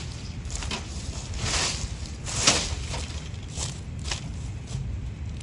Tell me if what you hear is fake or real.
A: real